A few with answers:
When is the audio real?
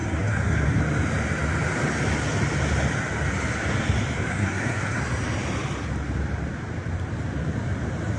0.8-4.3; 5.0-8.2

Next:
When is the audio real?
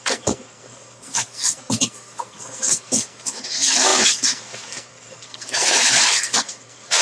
none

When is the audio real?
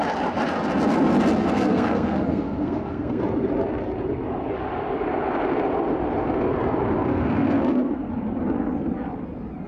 0.0-1.4; 3.2-7.1; 8.1-9.7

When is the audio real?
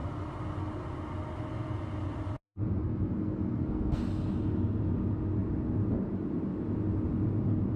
0.0-2.8; 4.0-7.8